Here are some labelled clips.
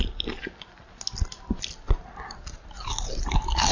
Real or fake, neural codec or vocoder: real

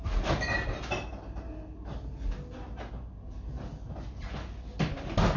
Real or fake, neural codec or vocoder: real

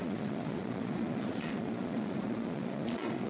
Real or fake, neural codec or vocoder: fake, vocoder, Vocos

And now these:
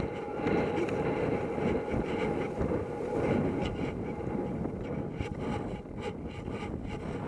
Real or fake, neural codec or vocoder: real